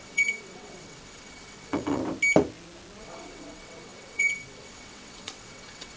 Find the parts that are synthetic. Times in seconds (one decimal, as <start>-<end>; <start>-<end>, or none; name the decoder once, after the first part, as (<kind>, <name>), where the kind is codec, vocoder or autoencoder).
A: 0.0-2.0 (vocoder, WaveNeXt); 3.0-6.0